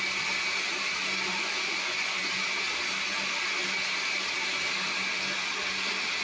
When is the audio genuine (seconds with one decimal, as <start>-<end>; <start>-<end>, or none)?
0.0-1.3; 2.3-6.2